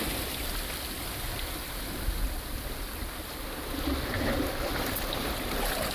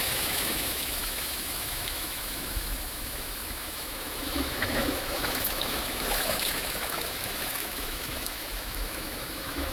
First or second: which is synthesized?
second